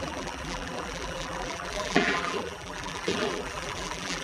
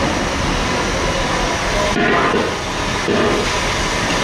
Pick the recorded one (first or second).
second